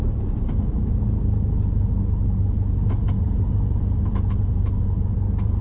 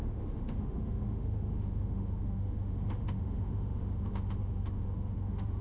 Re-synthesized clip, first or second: second